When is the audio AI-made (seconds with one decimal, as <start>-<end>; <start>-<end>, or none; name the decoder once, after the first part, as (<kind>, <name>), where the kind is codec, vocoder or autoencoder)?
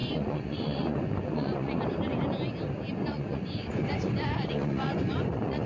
0.0-1.8 (vocoder, Vocos); 3.1-5.7